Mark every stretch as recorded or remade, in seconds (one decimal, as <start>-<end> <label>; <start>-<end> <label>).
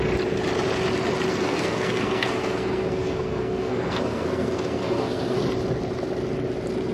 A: 0.0-1.3 recorded; 1.3-5.4 remade; 5.4-6.9 recorded